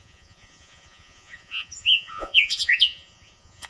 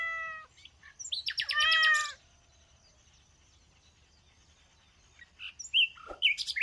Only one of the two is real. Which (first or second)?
second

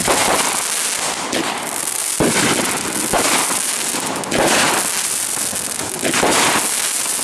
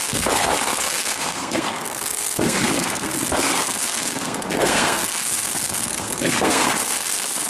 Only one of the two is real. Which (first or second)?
first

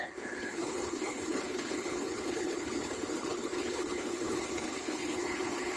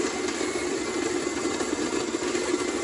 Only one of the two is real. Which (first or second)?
second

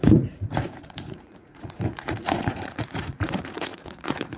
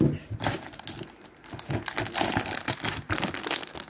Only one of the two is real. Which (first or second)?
second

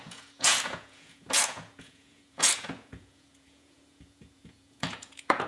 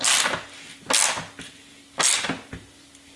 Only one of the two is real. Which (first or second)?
second